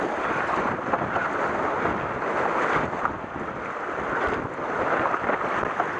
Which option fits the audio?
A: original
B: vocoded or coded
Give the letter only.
A